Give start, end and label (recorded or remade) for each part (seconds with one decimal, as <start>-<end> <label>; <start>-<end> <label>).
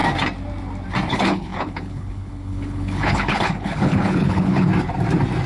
0.0-1.1 recorded; 1.1-4.7 remade; 4.7-5.5 recorded